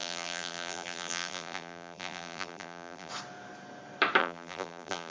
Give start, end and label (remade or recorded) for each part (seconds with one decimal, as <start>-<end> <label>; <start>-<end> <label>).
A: 0.0-3.1 remade; 3.1-4.2 recorded; 4.2-5.1 remade